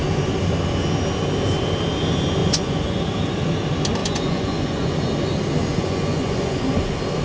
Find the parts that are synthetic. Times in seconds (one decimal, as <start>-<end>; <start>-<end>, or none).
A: 2.4-3.0; 4.0-5.1; 5.7-6.6